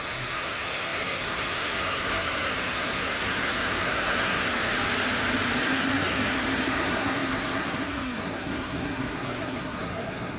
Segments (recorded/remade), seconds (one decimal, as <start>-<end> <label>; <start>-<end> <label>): 0.0-4.7 remade; 4.7-5.6 recorded; 5.6-10.4 remade